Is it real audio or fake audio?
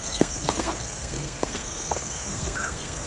fake